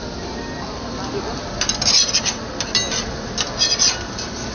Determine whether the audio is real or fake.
real